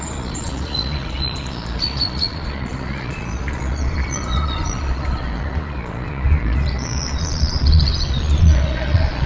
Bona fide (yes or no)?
no